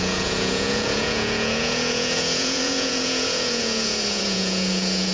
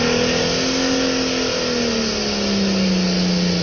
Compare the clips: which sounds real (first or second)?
second